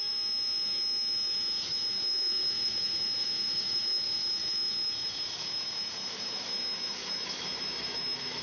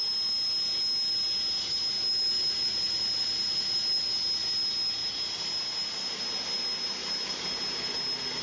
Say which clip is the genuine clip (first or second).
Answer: second